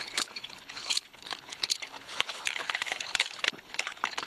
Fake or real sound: fake